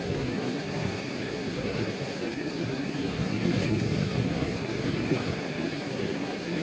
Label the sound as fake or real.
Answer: fake